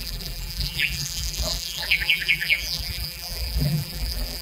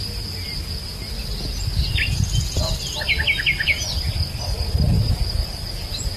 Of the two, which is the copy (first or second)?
first